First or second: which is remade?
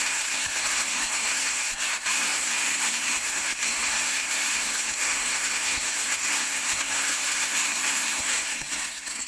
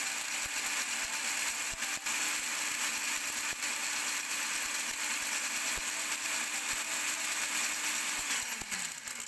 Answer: first